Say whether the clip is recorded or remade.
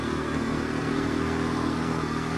remade